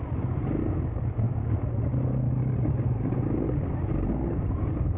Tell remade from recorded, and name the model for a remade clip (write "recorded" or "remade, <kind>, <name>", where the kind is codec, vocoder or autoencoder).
recorded